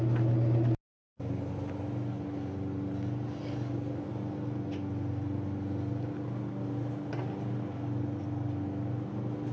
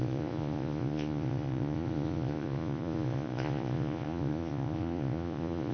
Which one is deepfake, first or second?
second